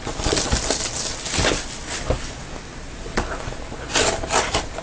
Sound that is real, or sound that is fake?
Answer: real